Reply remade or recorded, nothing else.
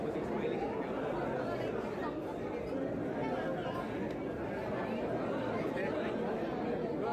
recorded